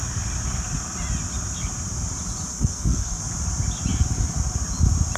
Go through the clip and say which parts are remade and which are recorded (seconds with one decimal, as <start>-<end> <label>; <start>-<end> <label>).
0.0-2.5 recorded; 2.5-3.2 remade; 3.2-5.2 recorded